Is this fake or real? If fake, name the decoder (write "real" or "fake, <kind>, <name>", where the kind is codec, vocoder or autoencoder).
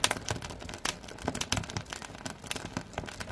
real